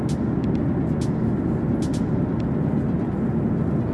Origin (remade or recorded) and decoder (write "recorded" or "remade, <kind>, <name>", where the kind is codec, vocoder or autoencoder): recorded